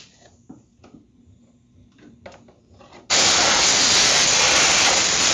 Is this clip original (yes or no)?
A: yes